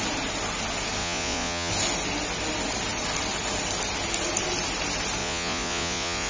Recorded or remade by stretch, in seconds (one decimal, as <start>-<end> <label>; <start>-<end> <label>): 0.0-1.0 recorded; 1.0-1.7 remade; 1.7-5.2 recorded; 5.2-6.3 remade